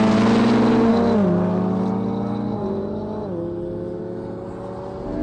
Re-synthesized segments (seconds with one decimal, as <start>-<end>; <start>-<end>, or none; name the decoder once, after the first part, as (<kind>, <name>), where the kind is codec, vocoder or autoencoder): none